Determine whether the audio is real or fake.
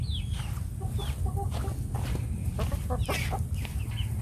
real